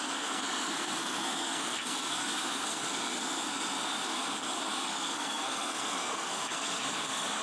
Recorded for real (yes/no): no